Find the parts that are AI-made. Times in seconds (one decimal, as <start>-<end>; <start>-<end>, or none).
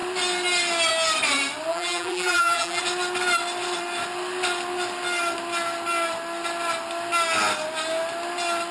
1.7-2.8